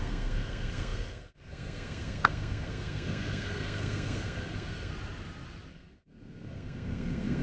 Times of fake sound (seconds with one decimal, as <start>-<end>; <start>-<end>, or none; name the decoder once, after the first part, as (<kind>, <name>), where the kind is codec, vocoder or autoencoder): 0.0-4.9 (codec, SNAC); 5.7-7.4

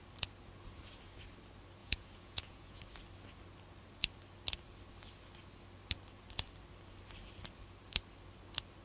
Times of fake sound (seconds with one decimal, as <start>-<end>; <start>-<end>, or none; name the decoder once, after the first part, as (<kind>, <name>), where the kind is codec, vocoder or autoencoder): 1.8-2.8 (vocoder, Vocos)

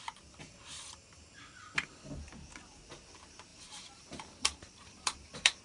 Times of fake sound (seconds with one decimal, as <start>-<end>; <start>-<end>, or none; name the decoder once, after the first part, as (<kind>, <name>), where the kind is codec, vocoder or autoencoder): 3.5-5.6 (vocoder, BigVGAN v2)

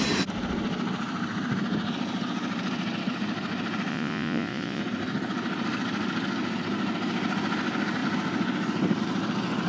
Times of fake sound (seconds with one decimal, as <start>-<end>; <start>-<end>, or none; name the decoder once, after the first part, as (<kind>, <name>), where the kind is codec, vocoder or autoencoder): 3.9-4.8 (vocoder, Vocos)

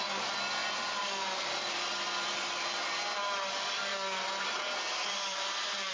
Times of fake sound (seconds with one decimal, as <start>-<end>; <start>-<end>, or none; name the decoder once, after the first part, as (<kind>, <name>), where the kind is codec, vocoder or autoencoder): 0.6-2.4 (vocoder, BigVGAN v2); 3.9-5.9